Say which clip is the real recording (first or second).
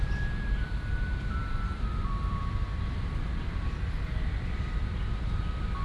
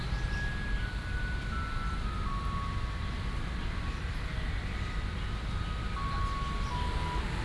second